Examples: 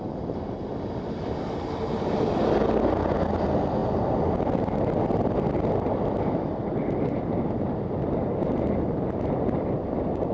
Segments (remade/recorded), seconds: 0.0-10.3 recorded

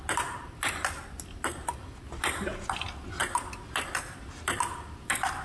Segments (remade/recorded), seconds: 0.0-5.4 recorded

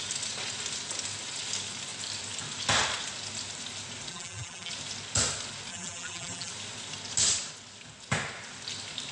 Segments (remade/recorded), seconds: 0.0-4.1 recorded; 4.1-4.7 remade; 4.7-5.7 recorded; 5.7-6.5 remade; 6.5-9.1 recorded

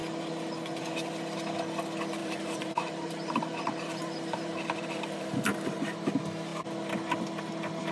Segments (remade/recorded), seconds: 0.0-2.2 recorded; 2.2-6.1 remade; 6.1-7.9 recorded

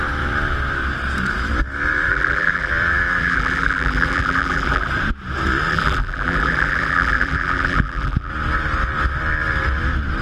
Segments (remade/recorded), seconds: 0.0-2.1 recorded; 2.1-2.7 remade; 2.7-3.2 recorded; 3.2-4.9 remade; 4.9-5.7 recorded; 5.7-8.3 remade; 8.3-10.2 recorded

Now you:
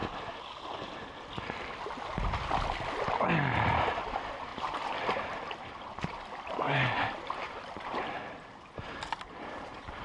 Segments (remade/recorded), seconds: 0.0-2.9 remade; 2.9-4.5 recorded; 4.5-9.4 remade; 9.4-10.0 recorded

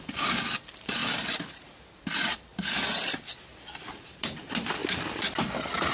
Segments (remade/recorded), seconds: 0.0-1.0 remade; 1.0-2.0 recorded; 2.0-2.5 remade; 2.5-3.8 recorded; 3.8-4.8 remade; 4.8-5.9 recorded

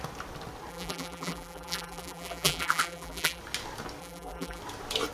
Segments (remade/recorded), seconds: 0.0-0.7 recorded; 0.7-3.4 remade; 3.4-4.0 recorded; 4.0-4.6 remade; 4.6-5.1 recorded